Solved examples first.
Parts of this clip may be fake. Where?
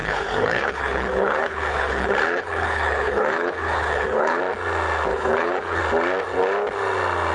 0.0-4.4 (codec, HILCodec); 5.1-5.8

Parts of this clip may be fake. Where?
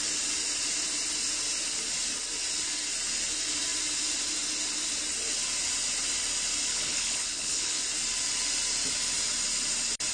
6.7-7.8 (codec, HILCodec)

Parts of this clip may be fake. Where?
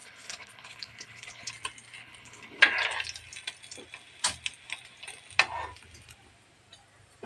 0.0-1.5 (codec, HILCodec); 2.0-2.6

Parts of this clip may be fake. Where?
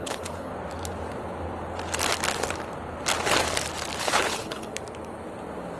0.0-0.5 (codec, HILCodec); 4.0-4.7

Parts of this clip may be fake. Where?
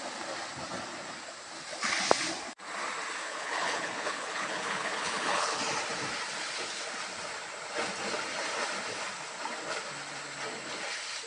3.2-5.6 (codec, HILCodec)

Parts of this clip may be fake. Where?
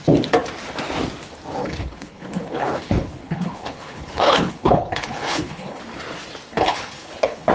1.6-5.8 (codec, HILCodec); 6.5-7.5